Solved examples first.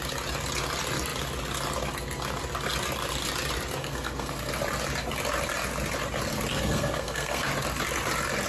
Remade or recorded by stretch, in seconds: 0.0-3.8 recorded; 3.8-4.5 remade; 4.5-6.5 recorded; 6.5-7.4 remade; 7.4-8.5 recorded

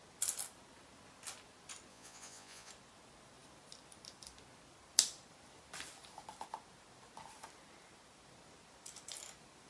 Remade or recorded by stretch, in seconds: 0.0-1.9 recorded; 1.9-2.7 remade; 2.7-9.7 recorded

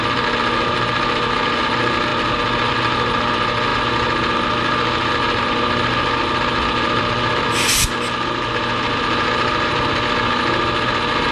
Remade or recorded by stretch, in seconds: 0.0-11.3 recorded

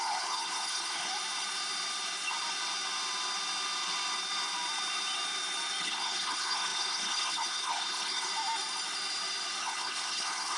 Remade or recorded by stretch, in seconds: 0.0-1.1 remade; 1.1-5.8 recorded; 5.8-8.3 remade; 8.3-9.6 recorded; 9.6-10.6 remade